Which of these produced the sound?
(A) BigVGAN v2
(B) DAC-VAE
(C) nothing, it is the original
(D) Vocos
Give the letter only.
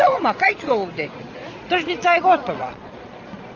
D